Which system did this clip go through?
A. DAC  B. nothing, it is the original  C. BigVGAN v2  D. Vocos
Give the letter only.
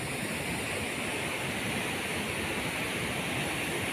B